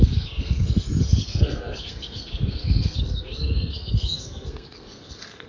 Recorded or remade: remade